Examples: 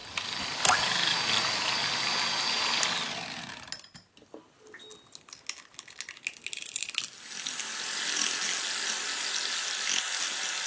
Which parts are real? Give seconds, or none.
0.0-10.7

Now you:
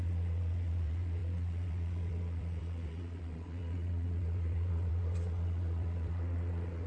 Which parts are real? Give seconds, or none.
none

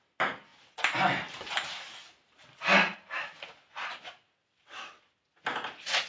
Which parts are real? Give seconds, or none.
0.0-4.2; 4.9-6.1

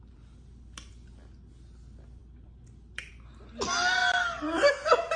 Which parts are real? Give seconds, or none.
0.0-5.2

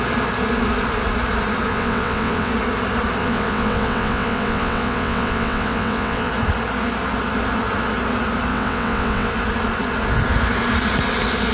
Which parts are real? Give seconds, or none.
0.0-1.7; 2.5-3.2; 6.3-8.5; 9.3-11.5

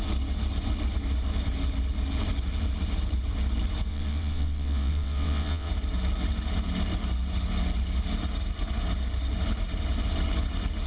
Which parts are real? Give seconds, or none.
0.0-3.9; 5.7-10.9

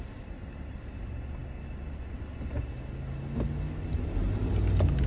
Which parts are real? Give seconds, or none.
0.0-5.1

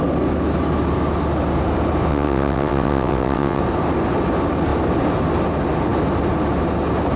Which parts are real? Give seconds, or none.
0.0-2.1; 3.6-7.2